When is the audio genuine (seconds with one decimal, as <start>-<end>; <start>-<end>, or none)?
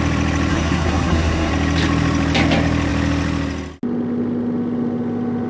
0.0-0.5; 1.5-5.5